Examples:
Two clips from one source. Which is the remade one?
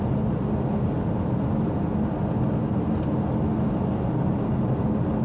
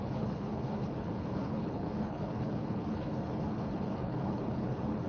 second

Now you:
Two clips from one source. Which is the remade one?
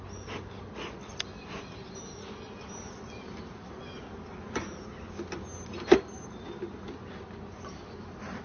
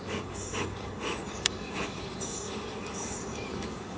second